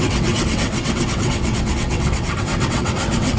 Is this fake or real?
fake